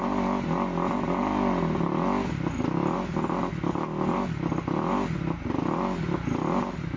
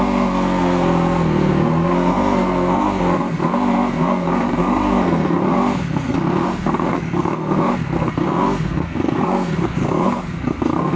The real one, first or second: first